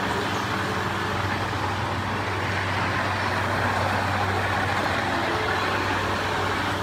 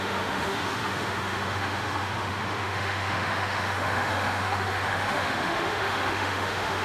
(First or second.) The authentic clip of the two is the first